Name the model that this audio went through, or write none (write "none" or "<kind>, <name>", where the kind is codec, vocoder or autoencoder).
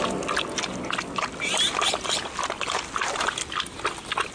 none